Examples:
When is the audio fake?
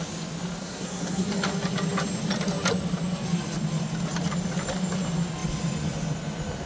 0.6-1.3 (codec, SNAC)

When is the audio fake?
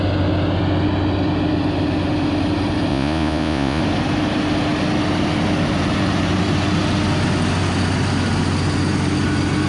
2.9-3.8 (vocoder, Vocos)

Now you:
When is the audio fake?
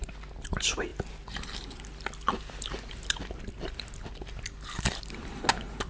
none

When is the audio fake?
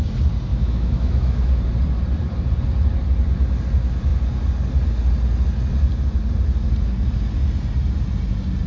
0.5-1.5 (autoencoder, DAC-VAE)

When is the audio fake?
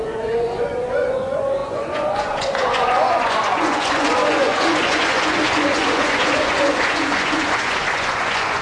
0.0-8.6 (vocoder, Vocos)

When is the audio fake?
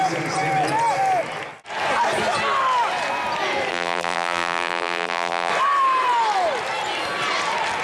3.7-5.5 (vocoder, BigVGAN v2)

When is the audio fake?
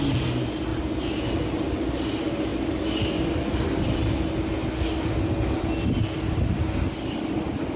none